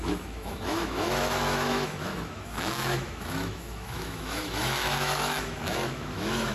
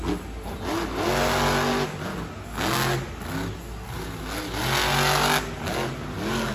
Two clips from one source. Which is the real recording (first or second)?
second